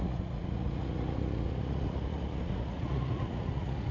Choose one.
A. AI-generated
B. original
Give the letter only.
A